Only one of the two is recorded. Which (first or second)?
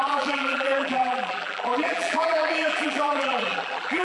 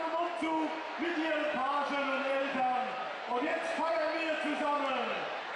second